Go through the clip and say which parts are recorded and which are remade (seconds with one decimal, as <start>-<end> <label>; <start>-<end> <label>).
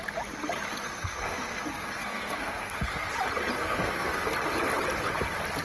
0.0-0.7 recorded; 0.7-3.1 remade; 3.1-3.6 recorded; 3.6-4.3 remade; 4.3-5.6 recorded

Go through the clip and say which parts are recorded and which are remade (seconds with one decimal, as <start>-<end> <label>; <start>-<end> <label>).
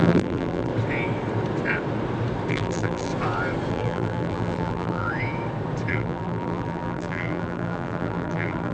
0.0-0.7 remade; 0.7-2.5 recorded; 2.5-3.1 remade; 3.1-3.7 recorded; 3.7-5.1 remade; 5.1-5.9 recorded; 5.9-8.7 remade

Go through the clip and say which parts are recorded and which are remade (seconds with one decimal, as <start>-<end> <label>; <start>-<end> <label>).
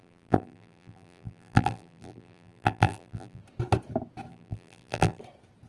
0.0-3.4 remade; 3.4-4.3 recorded; 4.3-5.2 remade; 5.2-5.7 recorded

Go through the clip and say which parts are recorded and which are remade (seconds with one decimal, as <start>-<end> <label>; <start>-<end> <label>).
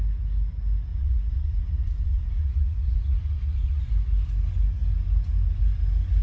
0.0-0.9 recorded; 0.9-3.9 remade; 3.9-6.2 recorded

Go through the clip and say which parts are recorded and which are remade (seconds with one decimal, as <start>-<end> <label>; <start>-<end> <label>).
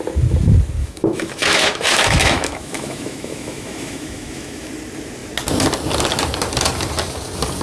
0.0-0.8 recorded; 0.8-4.7 remade; 4.7-7.6 recorded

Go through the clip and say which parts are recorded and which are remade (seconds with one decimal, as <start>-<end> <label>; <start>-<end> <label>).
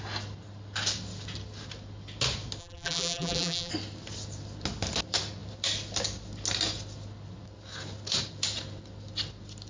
0.0-2.6 recorded; 2.6-3.7 remade; 3.7-9.7 recorded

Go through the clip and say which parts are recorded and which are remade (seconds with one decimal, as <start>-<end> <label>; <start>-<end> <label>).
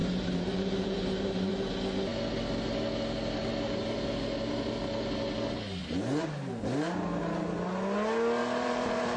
0.0-1.5 remade; 1.5-5.8 recorded; 5.8-6.5 remade; 6.5-8.4 recorded; 8.4-9.2 remade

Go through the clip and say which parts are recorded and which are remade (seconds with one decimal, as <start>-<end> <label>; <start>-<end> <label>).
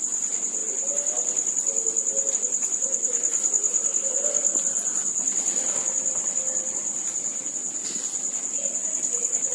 0.0-9.5 recorded